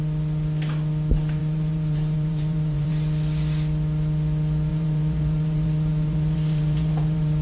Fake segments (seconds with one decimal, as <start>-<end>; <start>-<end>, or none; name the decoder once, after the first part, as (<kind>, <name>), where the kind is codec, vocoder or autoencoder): 1.4-2.9 (vocoder, BigVGAN v2); 4.7-7.4